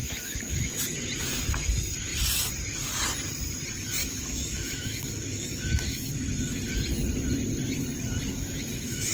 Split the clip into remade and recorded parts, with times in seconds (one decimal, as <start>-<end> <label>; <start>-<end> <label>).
0.0-0.8 remade; 0.8-4.0 recorded; 4.0-6.1 remade; 6.1-8.3 recorded; 8.3-9.1 remade